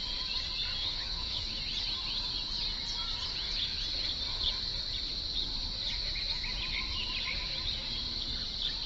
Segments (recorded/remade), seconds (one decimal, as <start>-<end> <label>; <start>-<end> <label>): 0.0-0.8 recorded; 0.8-1.6 remade; 1.6-8.9 recorded